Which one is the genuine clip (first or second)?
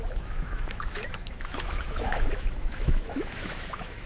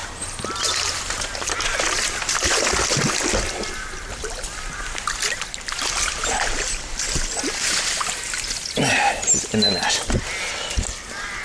second